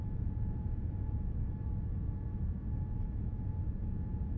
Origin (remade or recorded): remade